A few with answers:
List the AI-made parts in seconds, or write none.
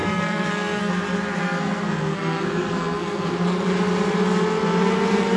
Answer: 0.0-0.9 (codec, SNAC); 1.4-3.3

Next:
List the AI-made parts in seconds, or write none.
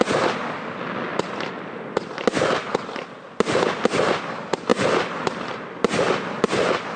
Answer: none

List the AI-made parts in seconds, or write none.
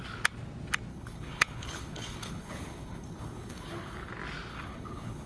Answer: 0.9-4.1 (codec, HILCodec); 4.5-5.3